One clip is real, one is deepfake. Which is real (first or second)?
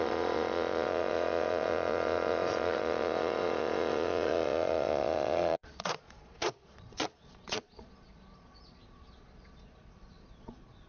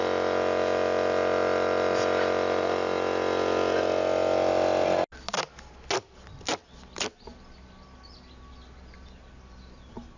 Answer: second